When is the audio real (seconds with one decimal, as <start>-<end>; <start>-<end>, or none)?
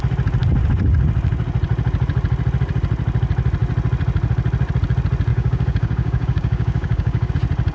0.0-5.3; 7.3-7.7